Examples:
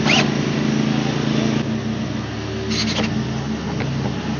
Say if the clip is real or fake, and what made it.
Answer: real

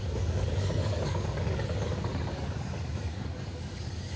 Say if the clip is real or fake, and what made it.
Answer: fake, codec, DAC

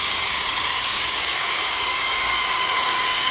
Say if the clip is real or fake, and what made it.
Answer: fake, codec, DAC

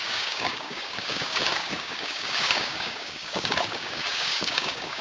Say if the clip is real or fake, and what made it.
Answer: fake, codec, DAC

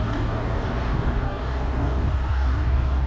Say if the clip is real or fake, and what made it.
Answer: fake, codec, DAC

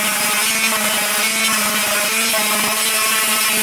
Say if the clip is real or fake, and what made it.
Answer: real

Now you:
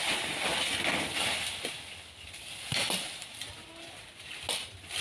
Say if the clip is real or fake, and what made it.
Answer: real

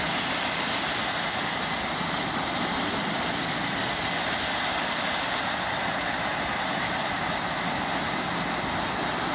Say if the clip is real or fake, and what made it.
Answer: real